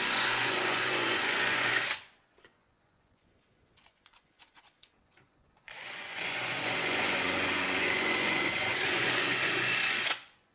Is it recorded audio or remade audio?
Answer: remade